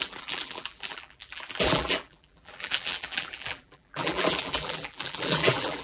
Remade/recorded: remade